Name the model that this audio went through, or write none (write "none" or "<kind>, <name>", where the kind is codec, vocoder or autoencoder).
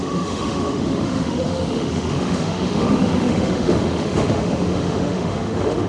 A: autoencoder, DAC-VAE